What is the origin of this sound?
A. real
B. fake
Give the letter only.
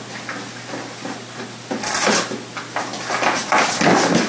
A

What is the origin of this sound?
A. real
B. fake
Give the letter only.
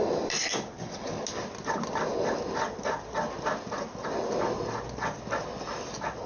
A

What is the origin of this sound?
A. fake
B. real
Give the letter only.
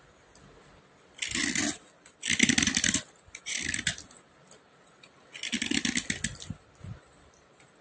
B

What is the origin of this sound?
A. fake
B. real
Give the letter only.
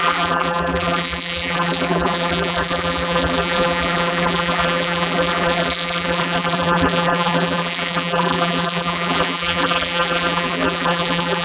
A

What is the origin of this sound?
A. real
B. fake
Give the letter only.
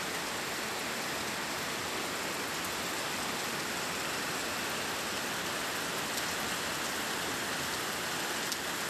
A